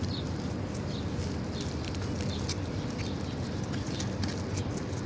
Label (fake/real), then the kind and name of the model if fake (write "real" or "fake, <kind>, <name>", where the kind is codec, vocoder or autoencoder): real